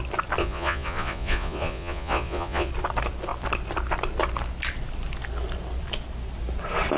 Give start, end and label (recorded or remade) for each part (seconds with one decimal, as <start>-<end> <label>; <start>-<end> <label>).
0.0-0.4 recorded; 0.4-2.7 remade; 2.7-7.0 recorded